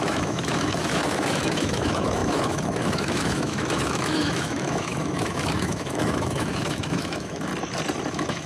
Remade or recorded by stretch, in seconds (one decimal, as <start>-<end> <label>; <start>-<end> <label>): 0.0-7.5 remade; 7.5-8.1 recorded; 8.1-8.5 remade